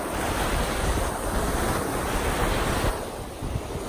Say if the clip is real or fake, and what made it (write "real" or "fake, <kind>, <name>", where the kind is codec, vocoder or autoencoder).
real